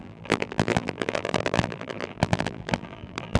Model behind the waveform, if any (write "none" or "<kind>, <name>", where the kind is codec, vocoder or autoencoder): vocoder, BigVGAN v2